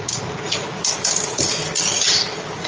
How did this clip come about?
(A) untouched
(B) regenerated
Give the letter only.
A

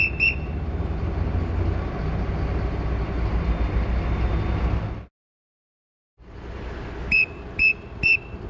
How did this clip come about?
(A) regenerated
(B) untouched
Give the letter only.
B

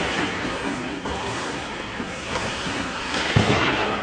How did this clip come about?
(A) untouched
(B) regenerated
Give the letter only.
B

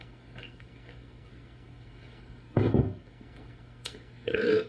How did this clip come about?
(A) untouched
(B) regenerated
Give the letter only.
B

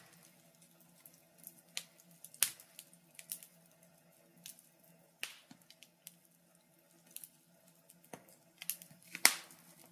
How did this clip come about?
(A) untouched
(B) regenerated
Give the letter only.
A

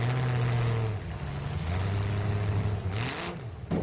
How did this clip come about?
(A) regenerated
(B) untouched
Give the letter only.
B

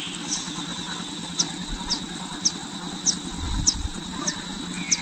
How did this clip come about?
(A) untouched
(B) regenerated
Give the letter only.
A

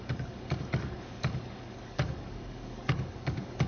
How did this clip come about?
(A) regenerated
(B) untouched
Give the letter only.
A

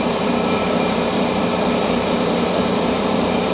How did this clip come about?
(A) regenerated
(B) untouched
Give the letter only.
A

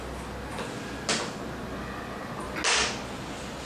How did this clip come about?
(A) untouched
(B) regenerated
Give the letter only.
A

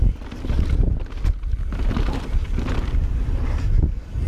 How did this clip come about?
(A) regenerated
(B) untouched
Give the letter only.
B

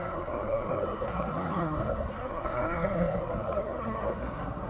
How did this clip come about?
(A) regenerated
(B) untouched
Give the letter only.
A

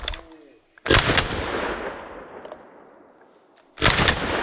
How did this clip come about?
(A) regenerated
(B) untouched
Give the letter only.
B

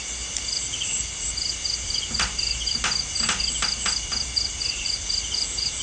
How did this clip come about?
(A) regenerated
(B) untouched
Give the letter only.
B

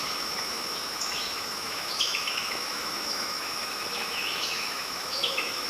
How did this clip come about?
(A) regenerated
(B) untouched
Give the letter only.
A